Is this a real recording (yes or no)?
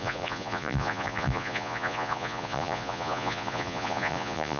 no